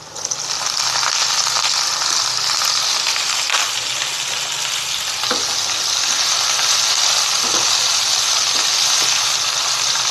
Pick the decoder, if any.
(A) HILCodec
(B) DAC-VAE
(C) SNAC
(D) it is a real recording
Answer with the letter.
D